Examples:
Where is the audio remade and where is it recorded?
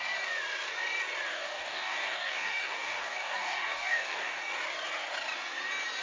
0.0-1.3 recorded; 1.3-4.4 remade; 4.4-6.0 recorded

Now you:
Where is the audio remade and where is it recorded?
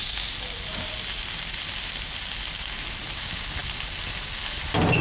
0.0-5.0 recorded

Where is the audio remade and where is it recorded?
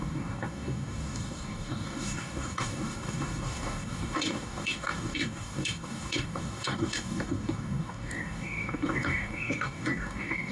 0.0-10.5 remade